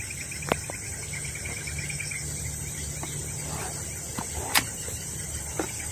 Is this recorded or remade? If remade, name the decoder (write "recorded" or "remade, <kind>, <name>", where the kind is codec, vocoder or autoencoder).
recorded